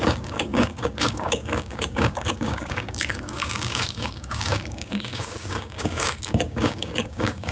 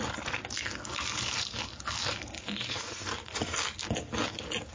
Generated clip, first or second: first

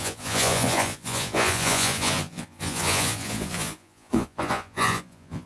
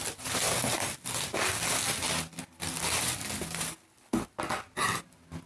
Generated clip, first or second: first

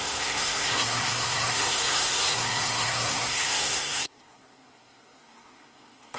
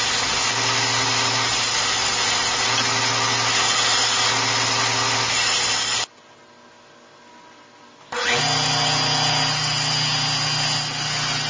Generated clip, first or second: first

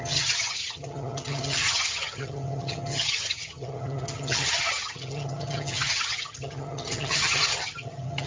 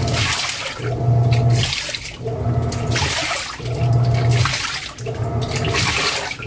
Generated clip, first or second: first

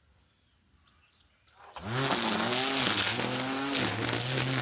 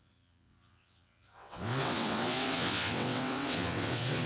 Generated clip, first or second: second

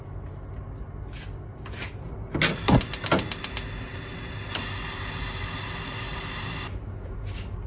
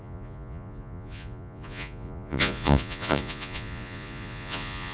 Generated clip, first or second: second